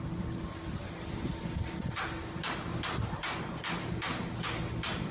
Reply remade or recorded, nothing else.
recorded